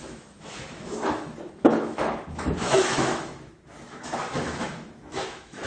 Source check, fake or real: fake